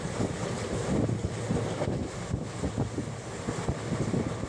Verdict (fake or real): real